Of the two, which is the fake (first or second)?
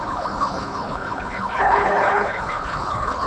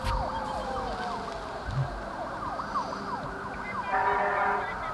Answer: first